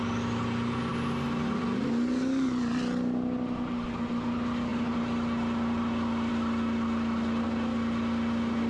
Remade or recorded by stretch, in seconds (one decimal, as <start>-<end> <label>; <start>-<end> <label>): 0.0-8.7 recorded